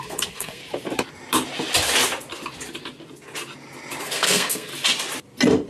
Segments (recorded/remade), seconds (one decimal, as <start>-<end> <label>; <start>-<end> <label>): 0.0-0.6 remade; 0.6-4.0 recorded; 4.0-4.7 remade; 4.7-5.7 recorded